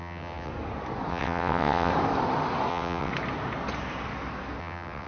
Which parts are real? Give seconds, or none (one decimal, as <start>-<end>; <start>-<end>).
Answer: 0.5-1.1; 1.9-2.7; 3.1-4.6